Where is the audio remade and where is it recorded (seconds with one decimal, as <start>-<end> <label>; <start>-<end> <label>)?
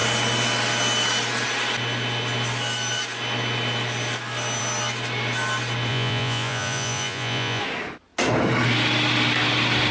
0.0-5.9 recorded; 5.9-7.6 remade; 7.6-9.9 recorded